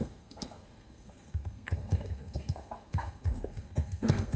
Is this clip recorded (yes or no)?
no